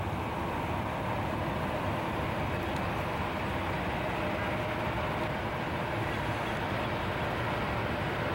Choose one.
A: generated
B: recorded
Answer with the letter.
B